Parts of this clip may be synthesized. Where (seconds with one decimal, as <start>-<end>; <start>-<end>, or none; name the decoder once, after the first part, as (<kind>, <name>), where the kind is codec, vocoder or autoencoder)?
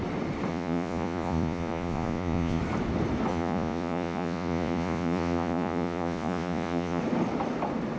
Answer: 0.5-2.6 (vocoder, Vocos); 3.3-7.0